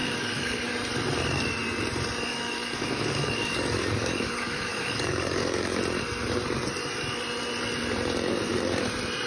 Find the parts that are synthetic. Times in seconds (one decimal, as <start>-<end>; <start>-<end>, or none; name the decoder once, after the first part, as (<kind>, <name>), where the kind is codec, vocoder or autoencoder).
0.0-0.7 (codec, DAC); 2.3-5.8